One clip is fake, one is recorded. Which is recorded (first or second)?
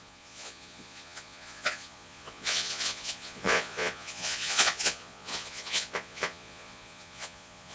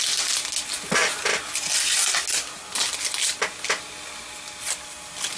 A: second